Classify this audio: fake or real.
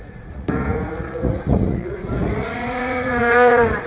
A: fake